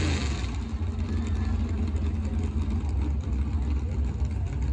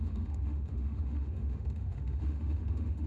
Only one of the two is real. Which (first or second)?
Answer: first